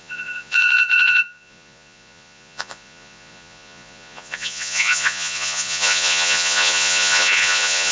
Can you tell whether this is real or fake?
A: fake